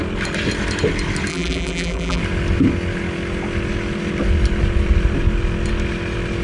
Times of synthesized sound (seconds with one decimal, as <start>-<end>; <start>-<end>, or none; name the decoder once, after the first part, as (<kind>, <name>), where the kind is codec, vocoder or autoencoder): 1.3-2.2 (vocoder, BigVGAN v2)